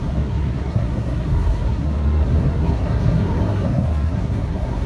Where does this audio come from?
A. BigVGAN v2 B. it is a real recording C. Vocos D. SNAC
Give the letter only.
D